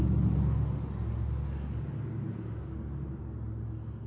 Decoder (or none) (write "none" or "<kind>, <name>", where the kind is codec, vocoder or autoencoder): none